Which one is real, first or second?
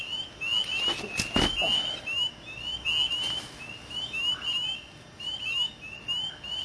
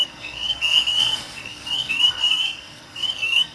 first